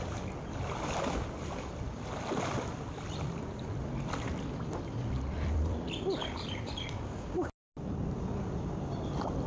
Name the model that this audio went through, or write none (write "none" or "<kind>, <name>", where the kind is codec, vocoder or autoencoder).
none